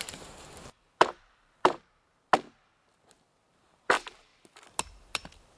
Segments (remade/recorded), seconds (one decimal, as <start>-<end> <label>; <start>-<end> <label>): 0.0-2.3 remade; 2.3-3.5 recorded; 3.5-4.3 remade; 4.3-5.0 recorded; 5.0-5.6 remade